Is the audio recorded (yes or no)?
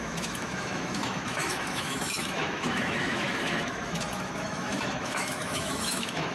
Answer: no